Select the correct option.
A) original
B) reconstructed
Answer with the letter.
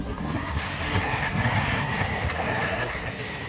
B